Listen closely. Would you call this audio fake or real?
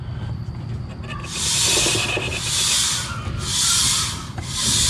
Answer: real